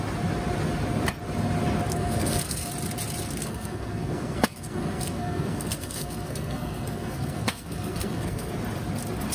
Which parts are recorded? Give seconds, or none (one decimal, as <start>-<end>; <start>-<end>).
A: 0.0-1.9; 2.7-3.4; 8.5-9.3